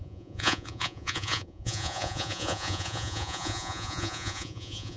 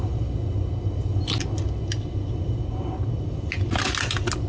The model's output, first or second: first